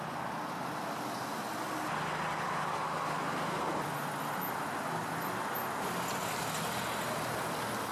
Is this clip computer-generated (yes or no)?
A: no